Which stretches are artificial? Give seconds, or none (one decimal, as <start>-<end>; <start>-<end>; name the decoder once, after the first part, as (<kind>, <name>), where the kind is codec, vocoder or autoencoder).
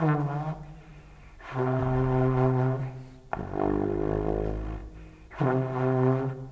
none